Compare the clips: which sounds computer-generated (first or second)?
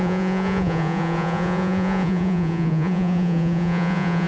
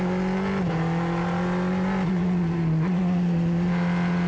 first